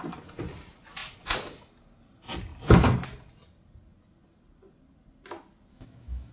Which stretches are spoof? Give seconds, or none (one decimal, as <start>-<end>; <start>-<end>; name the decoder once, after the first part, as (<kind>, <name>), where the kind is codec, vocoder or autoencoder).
5.7-6.3 (autoencoder, DAC-VAE)